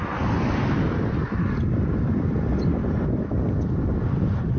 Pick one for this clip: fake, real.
real